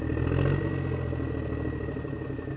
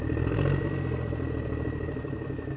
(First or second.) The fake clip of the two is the second